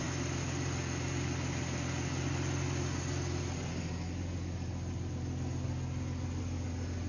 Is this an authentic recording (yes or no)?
yes